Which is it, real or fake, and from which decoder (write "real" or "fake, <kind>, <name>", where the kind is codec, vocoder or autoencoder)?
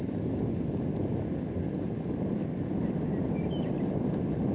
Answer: real